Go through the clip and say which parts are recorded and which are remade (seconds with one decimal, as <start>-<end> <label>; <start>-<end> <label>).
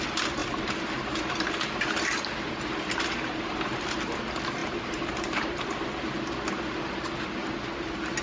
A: 0.0-0.4 recorded; 0.4-1.2 remade; 1.2-4.6 recorded; 4.6-5.6 remade; 5.6-8.2 recorded